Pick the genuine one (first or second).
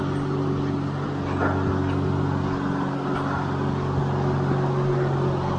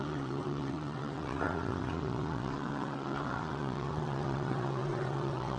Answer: first